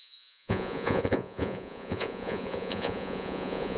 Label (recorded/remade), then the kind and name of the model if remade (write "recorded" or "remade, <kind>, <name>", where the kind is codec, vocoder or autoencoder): remade, vocoder, Vocos